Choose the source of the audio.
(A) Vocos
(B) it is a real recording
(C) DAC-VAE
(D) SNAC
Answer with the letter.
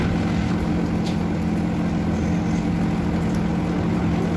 B